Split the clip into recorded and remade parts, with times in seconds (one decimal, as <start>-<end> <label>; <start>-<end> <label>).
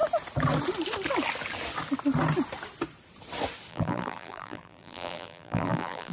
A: 0.0-3.7 recorded; 3.7-6.1 remade